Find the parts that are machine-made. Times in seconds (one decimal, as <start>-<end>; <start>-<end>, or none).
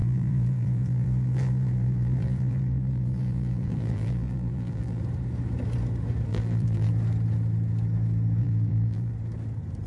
0.0-5.0; 6.3-6.9; 8.4-9.1